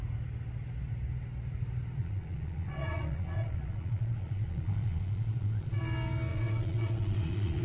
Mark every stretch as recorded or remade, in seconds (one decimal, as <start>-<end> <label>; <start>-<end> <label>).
0.0-2.0 recorded; 2.0-5.8 remade; 5.8-6.3 recorded; 6.3-7.6 remade